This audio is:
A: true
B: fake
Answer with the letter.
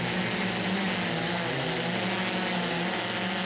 A